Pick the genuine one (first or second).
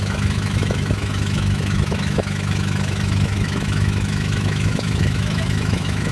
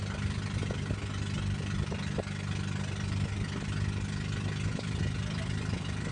second